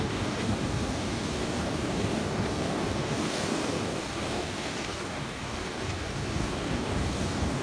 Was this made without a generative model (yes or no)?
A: no